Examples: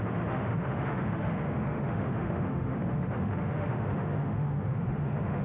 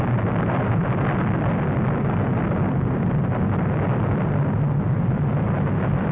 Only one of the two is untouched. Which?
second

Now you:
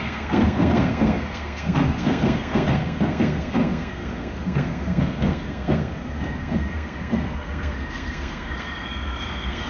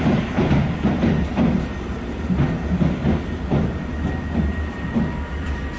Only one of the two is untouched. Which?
second